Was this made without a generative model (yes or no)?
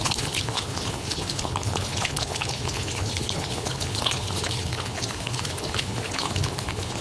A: no